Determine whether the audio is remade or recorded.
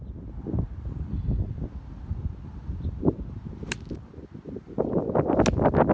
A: recorded